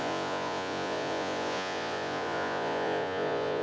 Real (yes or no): no